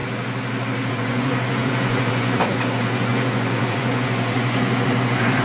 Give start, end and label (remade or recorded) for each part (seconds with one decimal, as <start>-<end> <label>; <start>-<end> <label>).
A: 0.0-0.9 recorded; 0.9-5.4 remade